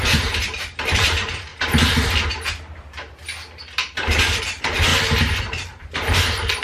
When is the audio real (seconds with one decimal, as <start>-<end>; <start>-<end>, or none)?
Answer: 1.5-4.4; 4.9-5.4